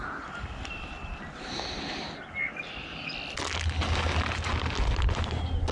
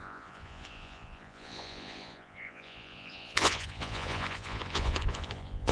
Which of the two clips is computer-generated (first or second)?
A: second